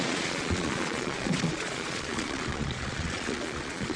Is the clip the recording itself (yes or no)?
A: no